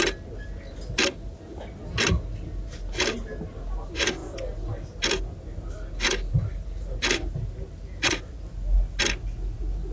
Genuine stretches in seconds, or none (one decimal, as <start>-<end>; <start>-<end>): 0.0-9.9